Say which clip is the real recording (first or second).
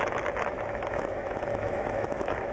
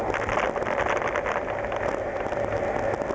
second